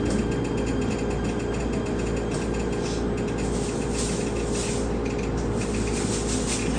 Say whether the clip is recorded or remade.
recorded